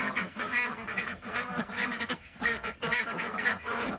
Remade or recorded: remade